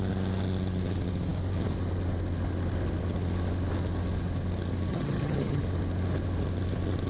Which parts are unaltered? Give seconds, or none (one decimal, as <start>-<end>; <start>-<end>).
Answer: 0.0-4.9; 5.6-7.1